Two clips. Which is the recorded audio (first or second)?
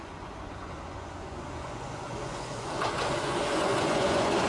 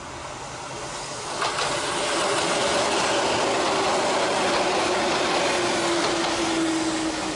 second